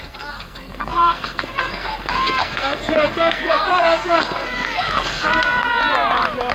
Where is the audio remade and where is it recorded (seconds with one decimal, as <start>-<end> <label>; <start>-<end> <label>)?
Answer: 0.0-5.7 remade; 5.7-6.5 recorded